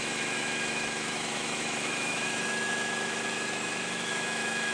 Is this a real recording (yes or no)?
no